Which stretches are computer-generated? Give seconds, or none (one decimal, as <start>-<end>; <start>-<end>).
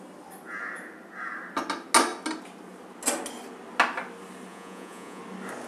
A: 4.5-5.2